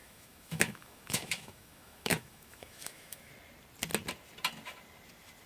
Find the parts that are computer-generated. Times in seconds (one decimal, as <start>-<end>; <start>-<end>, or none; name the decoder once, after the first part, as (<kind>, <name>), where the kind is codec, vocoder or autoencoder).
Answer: 0.0-3.3 (autoencoder, DAC-VAE)